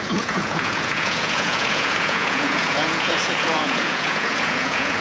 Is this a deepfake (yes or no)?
yes